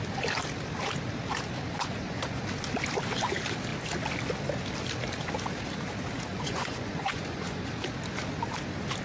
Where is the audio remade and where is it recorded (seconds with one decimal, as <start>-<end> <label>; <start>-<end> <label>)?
0.0-1.7 recorded; 1.7-2.4 remade; 2.4-6.3 recorded; 6.3-7.7 remade; 7.7-9.0 recorded